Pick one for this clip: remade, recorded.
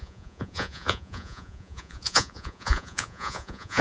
remade